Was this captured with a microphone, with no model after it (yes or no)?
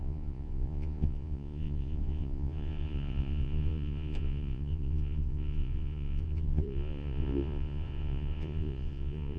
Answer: no